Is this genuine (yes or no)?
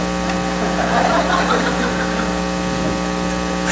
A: yes